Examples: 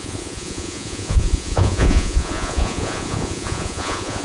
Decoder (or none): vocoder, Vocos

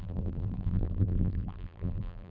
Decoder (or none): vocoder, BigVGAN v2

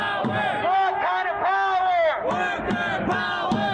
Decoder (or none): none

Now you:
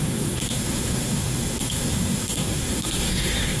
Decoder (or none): codec, SNAC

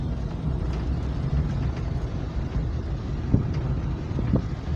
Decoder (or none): none